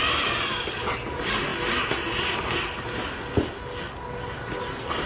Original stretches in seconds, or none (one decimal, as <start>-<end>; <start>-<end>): 0.0-5.1